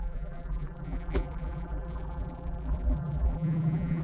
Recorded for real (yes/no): no